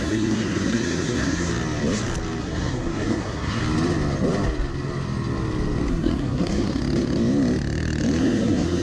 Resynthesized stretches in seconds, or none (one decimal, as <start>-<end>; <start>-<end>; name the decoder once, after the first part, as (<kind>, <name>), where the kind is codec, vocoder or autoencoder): 0.0-1.5 (codec, SNAC); 2.4-3.6; 5.9-6.8; 8.2-8.8